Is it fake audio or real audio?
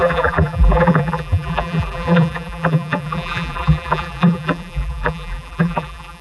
fake